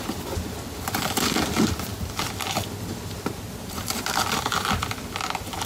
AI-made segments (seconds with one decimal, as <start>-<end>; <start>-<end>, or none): 0.0-5.7